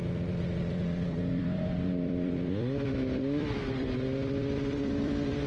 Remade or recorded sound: remade